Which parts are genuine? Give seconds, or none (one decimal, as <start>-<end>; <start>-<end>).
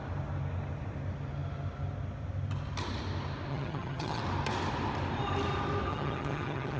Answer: 0.0-3.5; 4.2-5.9